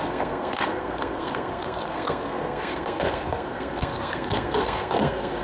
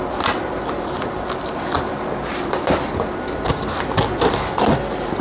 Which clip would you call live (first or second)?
second